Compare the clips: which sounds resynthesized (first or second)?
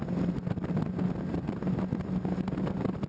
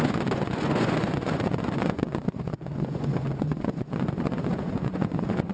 second